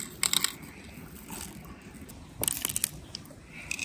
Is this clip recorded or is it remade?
recorded